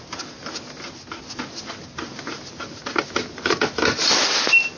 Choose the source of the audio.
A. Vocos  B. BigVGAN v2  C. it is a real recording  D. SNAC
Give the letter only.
C